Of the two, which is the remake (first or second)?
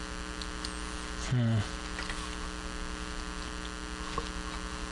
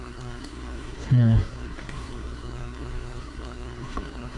second